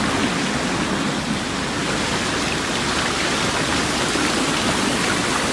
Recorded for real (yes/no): yes